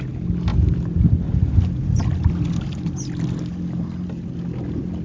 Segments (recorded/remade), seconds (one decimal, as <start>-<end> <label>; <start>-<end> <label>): 0.0-5.0 recorded